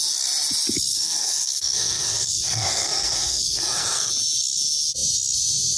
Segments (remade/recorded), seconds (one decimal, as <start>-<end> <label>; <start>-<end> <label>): 0.0-0.9 recorded; 0.9-4.1 remade; 4.1-5.8 recorded